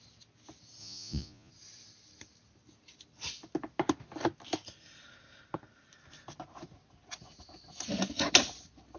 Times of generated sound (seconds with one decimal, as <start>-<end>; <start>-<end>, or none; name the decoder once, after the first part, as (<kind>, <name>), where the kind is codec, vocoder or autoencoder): 0.8-1.5 (vocoder, Vocos)